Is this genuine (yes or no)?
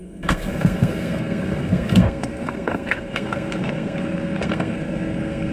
no